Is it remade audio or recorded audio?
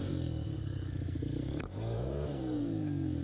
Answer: remade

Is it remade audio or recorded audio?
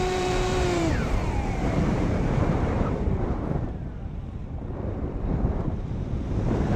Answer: remade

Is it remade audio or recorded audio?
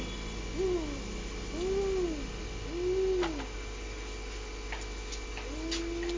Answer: recorded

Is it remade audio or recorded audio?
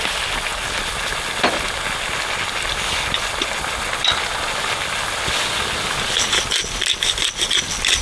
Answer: recorded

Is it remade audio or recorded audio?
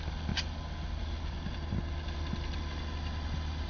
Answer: recorded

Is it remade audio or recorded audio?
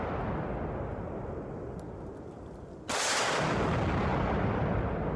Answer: recorded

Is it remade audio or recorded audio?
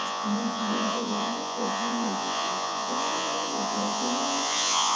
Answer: remade